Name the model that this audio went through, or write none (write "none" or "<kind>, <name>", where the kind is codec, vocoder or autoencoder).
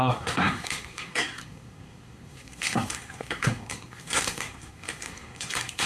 codec, SNAC